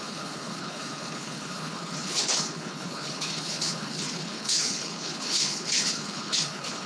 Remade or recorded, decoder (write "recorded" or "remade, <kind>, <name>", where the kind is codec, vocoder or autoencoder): remade, codec, HILCodec